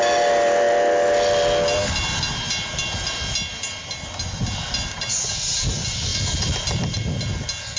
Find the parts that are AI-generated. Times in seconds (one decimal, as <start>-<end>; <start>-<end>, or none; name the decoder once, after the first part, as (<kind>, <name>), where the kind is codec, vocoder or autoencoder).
none